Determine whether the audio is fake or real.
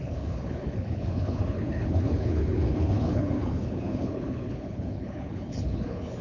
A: fake